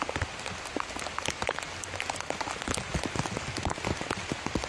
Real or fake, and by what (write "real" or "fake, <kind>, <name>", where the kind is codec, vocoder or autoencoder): real